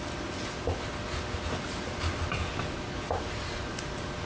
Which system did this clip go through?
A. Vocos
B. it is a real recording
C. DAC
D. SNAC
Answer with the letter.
B